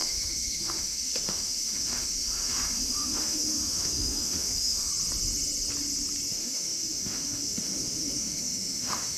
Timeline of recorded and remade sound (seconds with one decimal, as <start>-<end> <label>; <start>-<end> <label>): 0.0-4.9 remade; 4.9-6.3 recorded; 6.3-9.2 remade